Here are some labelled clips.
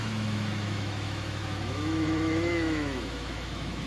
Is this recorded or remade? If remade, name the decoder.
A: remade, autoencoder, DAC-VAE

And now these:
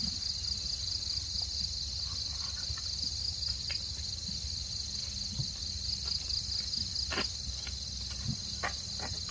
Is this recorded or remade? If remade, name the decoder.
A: recorded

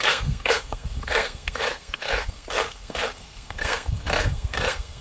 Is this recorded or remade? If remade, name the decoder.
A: remade, codec, SNAC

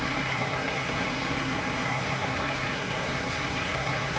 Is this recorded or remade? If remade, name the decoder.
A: remade, codec, SNAC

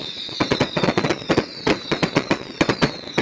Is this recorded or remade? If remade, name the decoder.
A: remade, vocoder, WaveNeXt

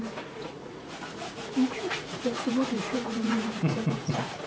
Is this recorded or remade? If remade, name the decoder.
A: remade, vocoder, Vocos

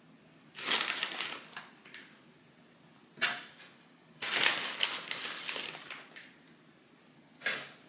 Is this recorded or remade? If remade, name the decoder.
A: recorded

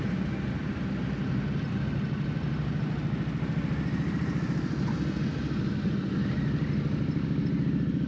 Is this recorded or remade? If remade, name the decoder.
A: recorded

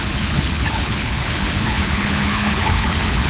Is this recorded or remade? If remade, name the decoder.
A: remade, codec, HILCodec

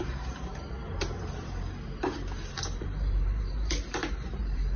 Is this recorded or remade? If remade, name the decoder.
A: remade, vocoder, BigVGAN v2